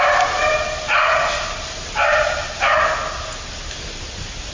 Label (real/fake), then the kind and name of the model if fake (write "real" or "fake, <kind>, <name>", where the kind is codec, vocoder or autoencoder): real